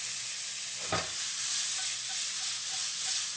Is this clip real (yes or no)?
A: yes